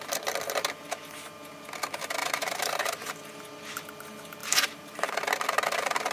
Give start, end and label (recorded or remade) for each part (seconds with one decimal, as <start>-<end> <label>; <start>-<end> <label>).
0.0-2.2 recorded; 2.2-3.1 remade; 3.1-4.4 recorded; 4.4-5.1 remade; 5.1-6.1 recorded